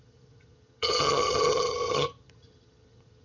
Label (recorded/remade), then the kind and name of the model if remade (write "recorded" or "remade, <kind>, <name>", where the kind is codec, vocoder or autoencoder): remade, vocoder, HiFi-GAN